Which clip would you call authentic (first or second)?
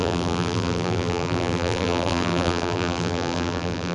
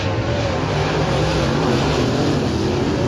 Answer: second